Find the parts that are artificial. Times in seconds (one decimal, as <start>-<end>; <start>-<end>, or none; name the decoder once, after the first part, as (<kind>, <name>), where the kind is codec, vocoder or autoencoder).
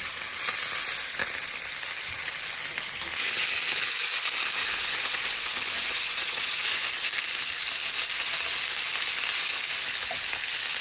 4.6-6.9 (vocoder, Vocos)